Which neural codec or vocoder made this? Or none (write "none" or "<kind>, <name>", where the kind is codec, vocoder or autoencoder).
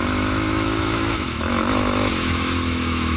autoencoder, DAC-VAE